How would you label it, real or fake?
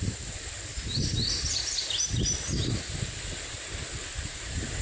real